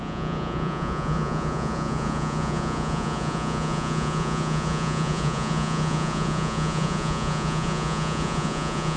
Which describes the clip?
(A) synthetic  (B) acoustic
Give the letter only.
A